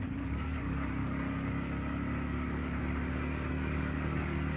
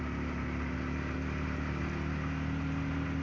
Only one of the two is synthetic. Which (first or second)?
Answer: first